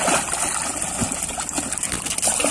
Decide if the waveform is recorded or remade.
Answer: recorded